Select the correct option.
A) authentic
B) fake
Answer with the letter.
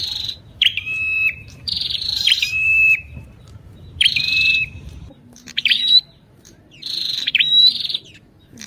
B